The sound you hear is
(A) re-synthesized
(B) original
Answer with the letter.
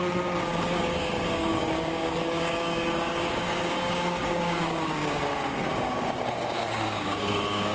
A